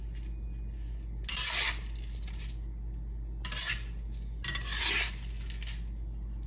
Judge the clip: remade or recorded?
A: recorded